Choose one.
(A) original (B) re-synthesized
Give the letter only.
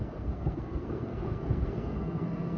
B